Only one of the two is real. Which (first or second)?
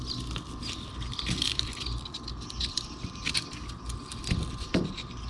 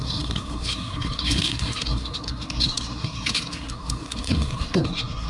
first